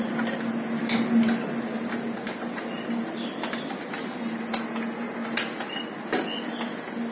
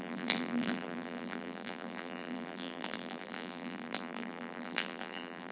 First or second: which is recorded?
first